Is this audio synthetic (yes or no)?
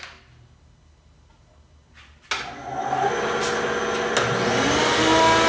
no